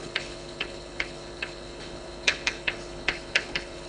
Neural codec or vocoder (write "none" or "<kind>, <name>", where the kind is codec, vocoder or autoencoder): codec, HILCodec